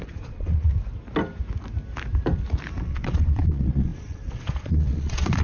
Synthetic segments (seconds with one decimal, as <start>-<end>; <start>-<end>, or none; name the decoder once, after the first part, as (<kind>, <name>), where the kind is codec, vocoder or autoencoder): 0.0-0.7 (vocoder, Vocos); 2.8-5.4